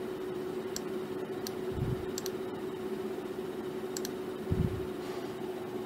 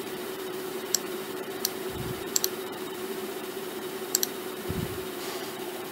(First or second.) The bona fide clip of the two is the first